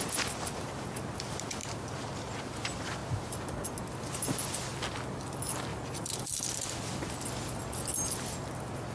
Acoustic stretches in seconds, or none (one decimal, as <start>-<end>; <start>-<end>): 0.0-8.9